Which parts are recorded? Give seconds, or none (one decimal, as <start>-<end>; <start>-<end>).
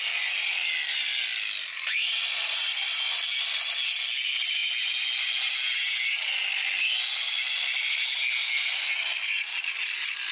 0.0-10.3